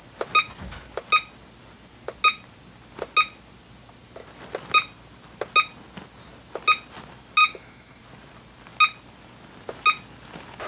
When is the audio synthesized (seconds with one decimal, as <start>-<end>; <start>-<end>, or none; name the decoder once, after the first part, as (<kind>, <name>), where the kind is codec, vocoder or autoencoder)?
7.4-8.0 (autoencoder, DAC-VAE)